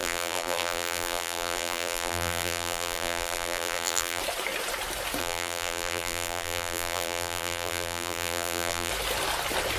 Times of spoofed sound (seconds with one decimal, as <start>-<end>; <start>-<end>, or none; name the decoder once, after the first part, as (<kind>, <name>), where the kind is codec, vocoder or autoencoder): 0.0-4.2 (vocoder, BigVGAN v2); 5.2-8.9